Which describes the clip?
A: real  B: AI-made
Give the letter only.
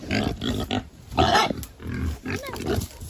A